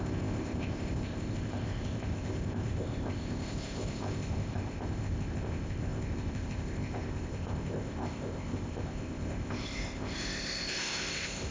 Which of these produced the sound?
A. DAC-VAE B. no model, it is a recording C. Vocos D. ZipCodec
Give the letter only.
D